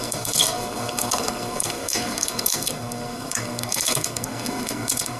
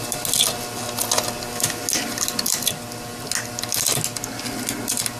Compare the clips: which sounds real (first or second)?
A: second